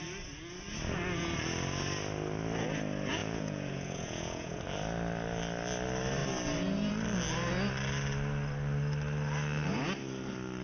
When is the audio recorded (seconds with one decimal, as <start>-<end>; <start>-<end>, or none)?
0.0-3.2; 4.6-10.6